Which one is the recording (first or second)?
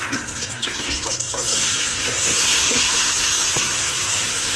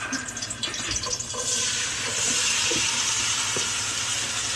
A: second